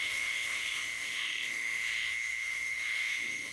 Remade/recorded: remade